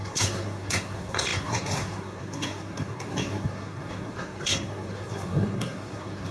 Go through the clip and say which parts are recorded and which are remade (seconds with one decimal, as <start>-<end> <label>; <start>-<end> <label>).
0.0-6.3 remade